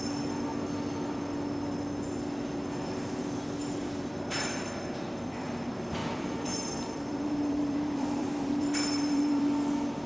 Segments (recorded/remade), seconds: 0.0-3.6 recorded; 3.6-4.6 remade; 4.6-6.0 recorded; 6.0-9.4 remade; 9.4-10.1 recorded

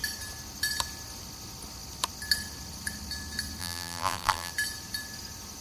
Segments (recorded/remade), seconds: 0.0-3.6 recorded; 3.6-4.5 remade; 4.5-5.6 recorded